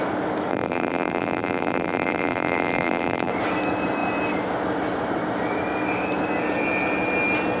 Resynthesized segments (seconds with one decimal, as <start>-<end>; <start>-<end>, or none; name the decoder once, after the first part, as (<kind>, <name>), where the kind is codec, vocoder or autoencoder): 0.5-3.3 (vocoder, BigVGAN v2)